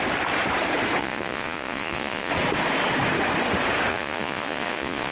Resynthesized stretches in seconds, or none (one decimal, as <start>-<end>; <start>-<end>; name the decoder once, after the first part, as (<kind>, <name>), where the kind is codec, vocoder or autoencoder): 1.0-2.3 (vocoder, Vocos); 3.9-5.1